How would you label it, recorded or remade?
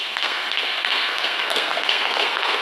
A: remade